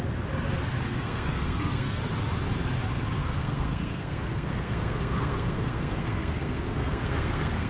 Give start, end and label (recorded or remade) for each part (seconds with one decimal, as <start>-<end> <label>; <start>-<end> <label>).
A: 0.0-0.9 recorded; 0.9-2.0 remade; 2.0-3.2 recorded; 3.2-7.7 remade